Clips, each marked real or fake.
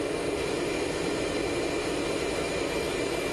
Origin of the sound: real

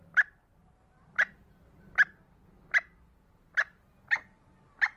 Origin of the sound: real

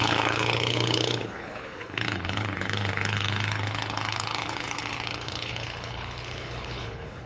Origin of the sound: fake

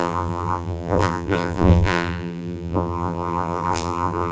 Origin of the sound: fake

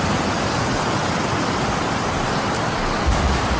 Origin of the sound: real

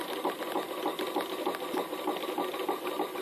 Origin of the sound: real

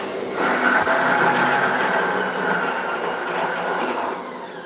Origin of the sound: real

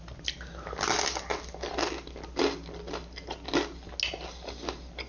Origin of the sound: real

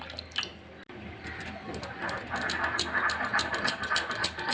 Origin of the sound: real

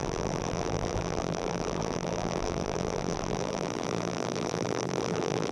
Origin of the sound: fake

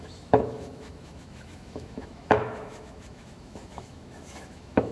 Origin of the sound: fake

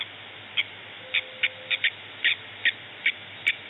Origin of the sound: real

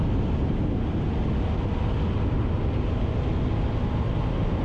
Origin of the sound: real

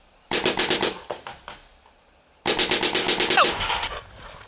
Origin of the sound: real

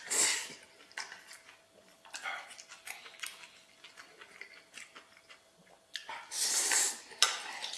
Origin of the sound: real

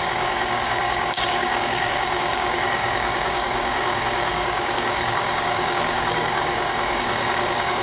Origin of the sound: fake